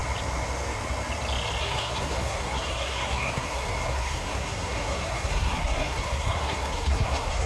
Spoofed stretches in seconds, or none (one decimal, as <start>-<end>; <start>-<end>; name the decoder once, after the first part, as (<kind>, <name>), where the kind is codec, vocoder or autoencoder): 1.6-7.5 (codec, SNAC)